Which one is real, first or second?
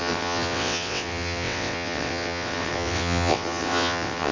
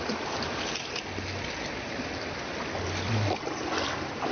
second